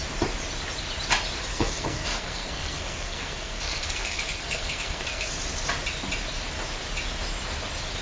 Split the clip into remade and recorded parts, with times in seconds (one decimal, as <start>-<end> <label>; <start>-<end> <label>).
0.0-1.5 recorded; 1.5-5.3 remade; 5.3-8.0 recorded